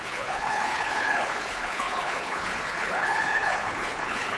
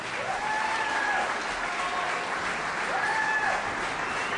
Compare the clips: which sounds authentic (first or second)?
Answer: second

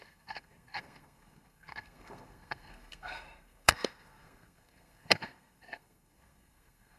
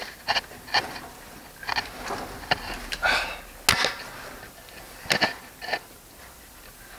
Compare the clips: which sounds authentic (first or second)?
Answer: second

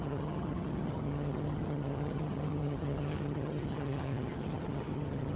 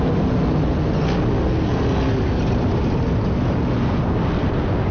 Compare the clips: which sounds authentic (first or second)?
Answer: second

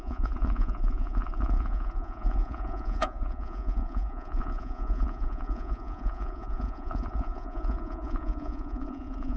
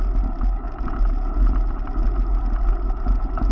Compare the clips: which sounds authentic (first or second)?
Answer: second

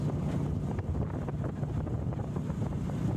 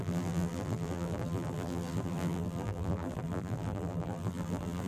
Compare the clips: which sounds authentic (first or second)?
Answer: first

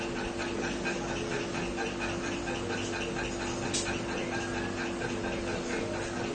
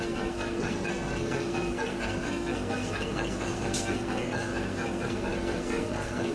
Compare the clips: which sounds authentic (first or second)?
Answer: first